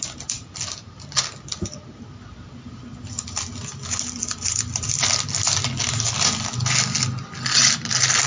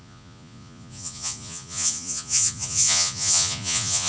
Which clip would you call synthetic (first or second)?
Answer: second